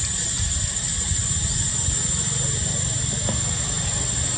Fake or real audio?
real